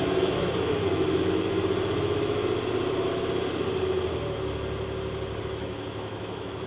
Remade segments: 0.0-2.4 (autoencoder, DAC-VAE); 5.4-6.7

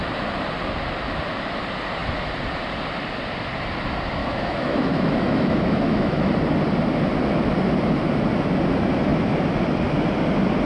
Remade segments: 4.2-6.3 (autoencoder, DAC-VAE)

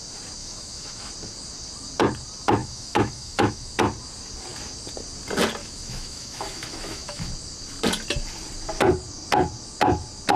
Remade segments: 0.4-1.1 (autoencoder, DAC-VAE); 2.6-3.7; 5.6-7.3

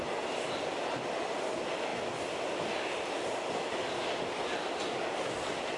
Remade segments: none

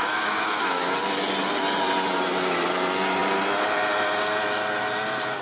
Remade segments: 0.0-1.0 (autoencoder, DAC-VAE)

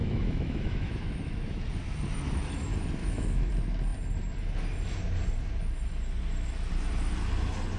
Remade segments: 0.0-1.6 (autoencoder, DAC-VAE); 3.0-3.5

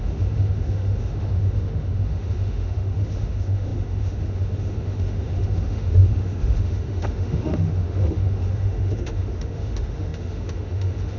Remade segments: 0.0-11.2 (autoencoder, DAC-VAE)